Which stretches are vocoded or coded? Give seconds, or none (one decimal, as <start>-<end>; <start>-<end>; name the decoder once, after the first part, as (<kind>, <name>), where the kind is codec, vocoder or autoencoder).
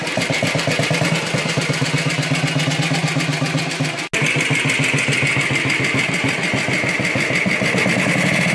none